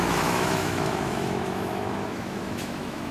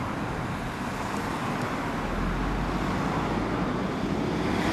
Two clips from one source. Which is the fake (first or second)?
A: first